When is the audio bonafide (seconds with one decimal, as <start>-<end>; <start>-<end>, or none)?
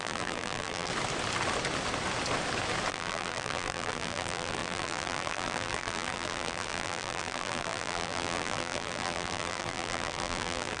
0.9-2.9